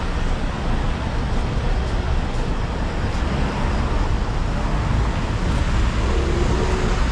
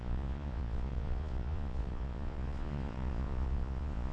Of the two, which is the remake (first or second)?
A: second